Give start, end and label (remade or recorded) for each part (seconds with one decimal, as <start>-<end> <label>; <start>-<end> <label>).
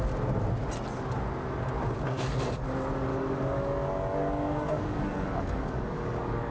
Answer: 0.0-3.1 recorded; 3.1-6.5 remade